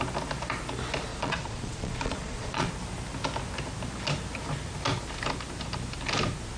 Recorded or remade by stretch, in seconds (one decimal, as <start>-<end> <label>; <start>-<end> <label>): 0.0-1.1 recorded; 1.1-2.7 remade; 2.7-6.6 recorded